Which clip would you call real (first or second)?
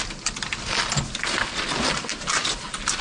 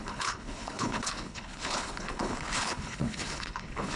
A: first